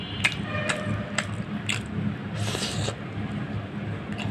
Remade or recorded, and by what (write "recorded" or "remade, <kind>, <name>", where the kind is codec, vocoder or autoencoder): recorded